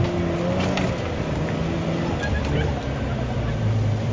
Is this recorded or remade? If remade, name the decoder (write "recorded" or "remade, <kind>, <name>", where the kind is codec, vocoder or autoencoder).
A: recorded